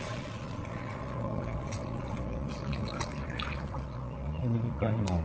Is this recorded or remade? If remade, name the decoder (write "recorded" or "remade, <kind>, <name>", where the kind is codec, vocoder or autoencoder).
remade, vocoder, Vocos